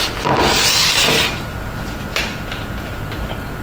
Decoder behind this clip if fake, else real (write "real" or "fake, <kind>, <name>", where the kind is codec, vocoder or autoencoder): real